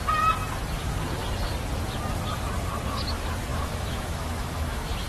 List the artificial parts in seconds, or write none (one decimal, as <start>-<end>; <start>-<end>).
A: 3.5-5.1

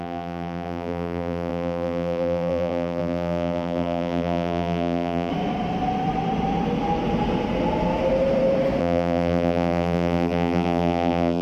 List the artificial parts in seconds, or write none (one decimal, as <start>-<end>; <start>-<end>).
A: 0.0-5.3; 8.8-11.4

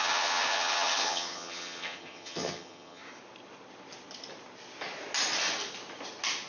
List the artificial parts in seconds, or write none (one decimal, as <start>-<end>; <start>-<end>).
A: 0.0-3.0

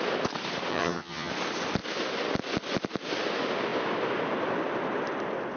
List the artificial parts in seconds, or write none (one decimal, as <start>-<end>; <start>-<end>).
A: 0.7-1.3

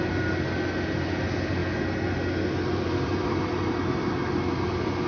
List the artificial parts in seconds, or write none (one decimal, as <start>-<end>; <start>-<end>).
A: none

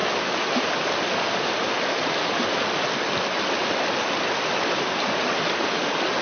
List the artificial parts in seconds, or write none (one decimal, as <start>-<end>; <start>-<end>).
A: 0.0-1.9

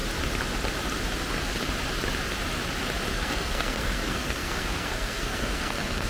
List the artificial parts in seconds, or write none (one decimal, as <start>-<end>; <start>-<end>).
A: 3.1-6.1